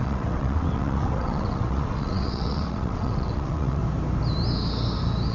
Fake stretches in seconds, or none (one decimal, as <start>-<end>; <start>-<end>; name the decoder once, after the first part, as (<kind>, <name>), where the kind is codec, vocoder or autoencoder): 0.0-3.8 (vocoder, WaveNeXt)